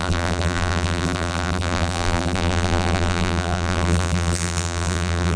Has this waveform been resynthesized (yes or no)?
yes